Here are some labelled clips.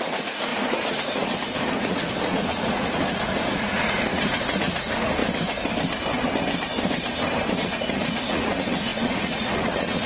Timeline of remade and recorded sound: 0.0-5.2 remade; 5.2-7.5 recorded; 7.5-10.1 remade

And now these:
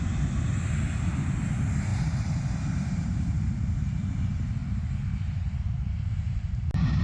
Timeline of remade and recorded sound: 0.0-1.9 recorded; 1.9-3.8 remade; 3.8-4.6 recorded; 4.6-6.6 remade; 6.6-7.0 recorded

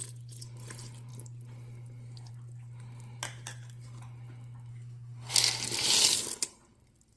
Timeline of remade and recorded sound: 0.0-4.7 recorded; 4.7-5.3 remade; 5.3-7.2 recorded

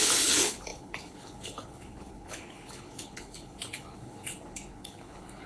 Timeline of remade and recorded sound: 0.0-5.5 remade

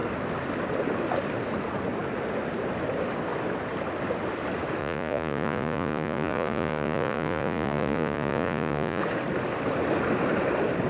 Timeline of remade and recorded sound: 0.0-4.8 recorded; 4.8-9.0 remade; 9.0-10.9 recorded

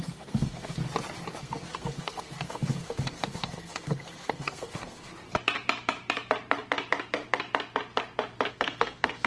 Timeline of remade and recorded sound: 0.0-0.8 remade; 0.8-1.4 recorded; 1.4-5.1 remade; 5.1-8.5 recorded; 8.5-9.3 remade

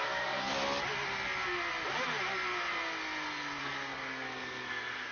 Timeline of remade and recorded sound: 0.0-0.5 remade; 0.5-3.6 recorded; 3.6-5.1 remade

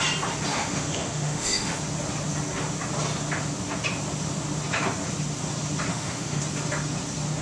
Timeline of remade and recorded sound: 0.0-0.5 recorded; 0.5-1.8 remade; 1.8-5.9 recorded; 5.9-6.4 remade; 6.4-7.4 recorded